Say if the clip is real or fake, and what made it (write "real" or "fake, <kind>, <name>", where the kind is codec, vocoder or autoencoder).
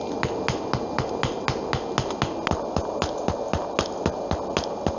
real